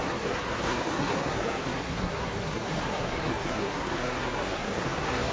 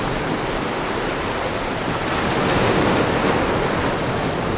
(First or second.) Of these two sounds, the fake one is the first